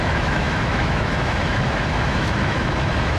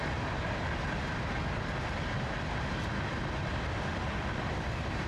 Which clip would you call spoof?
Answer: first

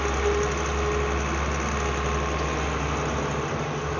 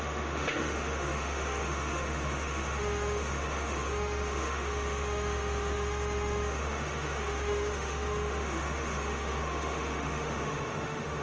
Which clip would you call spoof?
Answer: second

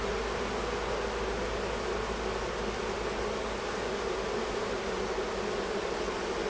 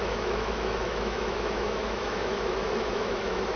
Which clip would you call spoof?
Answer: second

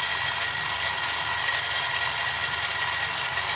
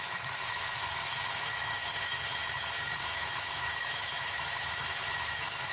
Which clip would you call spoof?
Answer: second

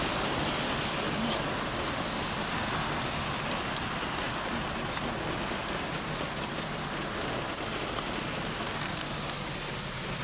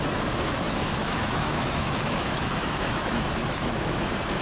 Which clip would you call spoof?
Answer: second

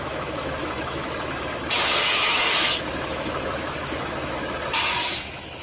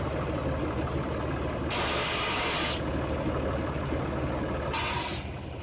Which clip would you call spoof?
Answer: first